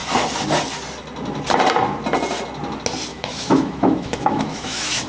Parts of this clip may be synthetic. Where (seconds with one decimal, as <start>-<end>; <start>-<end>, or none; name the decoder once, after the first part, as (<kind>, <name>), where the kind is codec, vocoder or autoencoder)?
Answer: 3.1-5.1 (autoencoder, DAC-VAE)